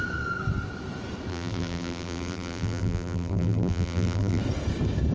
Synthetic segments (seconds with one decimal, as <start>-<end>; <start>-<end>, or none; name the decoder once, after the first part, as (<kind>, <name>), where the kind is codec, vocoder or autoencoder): 1.3-4.4 (vocoder, BigVGAN v2)